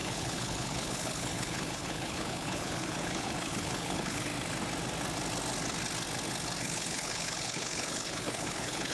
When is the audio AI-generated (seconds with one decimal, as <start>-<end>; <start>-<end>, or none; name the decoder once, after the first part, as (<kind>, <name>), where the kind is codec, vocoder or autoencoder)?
0.0-4.3 (codec, HILCodec); 6.6-8.9